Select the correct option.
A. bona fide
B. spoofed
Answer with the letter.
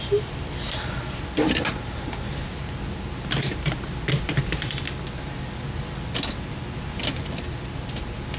A